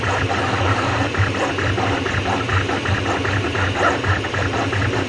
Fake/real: real